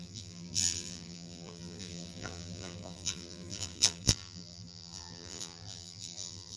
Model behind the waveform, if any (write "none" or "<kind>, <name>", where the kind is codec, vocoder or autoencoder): vocoder, BigVGAN v2